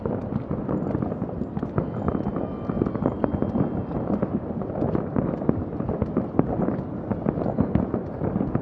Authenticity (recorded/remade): recorded